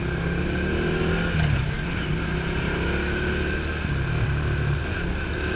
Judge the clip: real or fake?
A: real